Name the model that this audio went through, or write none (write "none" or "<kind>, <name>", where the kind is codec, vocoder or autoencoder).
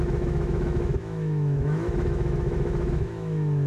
autoencoder, DAC-VAE